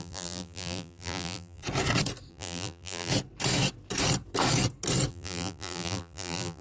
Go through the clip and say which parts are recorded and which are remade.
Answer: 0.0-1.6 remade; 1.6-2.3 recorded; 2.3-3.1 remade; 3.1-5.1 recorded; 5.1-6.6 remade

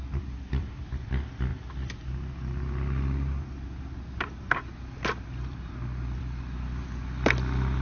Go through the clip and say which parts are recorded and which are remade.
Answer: 0.0-7.8 recorded

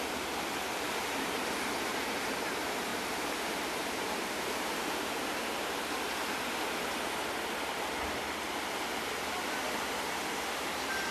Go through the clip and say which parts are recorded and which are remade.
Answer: 0.0-2.9 recorded; 2.9-7.1 remade; 7.1-11.1 recorded

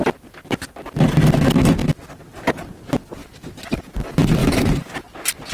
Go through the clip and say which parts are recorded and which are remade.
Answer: 0.0-3.2 recorded; 3.2-3.8 remade; 3.8-4.4 recorded; 4.4-4.9 remade; 4.9-5.5 recorded

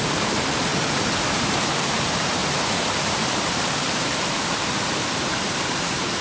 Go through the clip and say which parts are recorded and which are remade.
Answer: 0.0-0.7 remade; 0.7-1.3 recorded; 1.3-6.2 remade